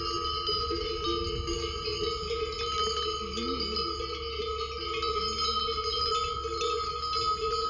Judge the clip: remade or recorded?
recorded